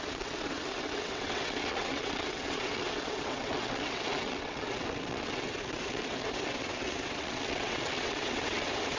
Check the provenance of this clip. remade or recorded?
remade